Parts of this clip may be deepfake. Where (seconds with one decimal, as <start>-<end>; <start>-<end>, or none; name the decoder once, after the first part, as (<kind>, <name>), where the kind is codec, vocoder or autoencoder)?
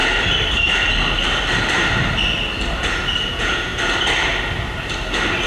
3.3-3.7 (vocoder, Vocos)